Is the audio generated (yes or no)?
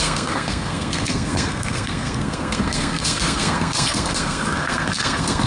yes